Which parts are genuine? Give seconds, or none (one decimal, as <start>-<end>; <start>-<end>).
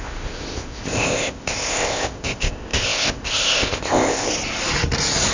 4.3-5.3